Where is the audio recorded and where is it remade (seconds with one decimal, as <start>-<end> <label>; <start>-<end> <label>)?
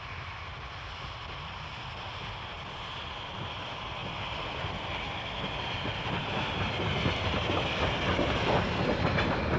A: 0.0-9.6 recorded